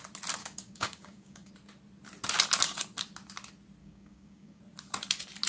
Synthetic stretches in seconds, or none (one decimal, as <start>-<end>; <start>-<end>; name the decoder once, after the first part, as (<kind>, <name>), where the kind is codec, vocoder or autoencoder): 0.4-1.5 (codec, DAC); 3.8-4.6